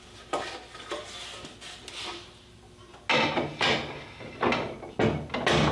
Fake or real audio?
real